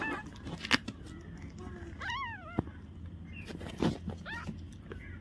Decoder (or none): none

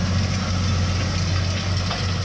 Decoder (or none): none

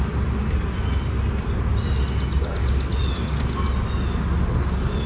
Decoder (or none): none